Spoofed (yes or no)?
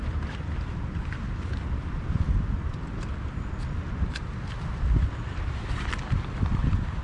no